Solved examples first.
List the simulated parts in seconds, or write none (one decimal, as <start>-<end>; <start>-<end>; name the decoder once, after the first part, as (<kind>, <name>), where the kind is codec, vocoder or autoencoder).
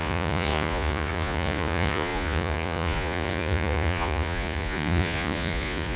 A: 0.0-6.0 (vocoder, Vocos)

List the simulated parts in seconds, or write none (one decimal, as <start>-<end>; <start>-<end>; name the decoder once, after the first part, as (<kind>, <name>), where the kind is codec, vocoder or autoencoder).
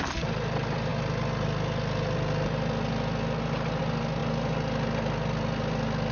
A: none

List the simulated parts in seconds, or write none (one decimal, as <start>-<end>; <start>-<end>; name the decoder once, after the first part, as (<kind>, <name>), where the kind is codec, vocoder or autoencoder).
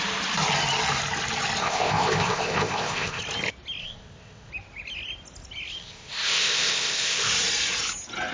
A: 1.6-3.2 (codec, ZipCodec); 3.8-4.5; 5.8-7.3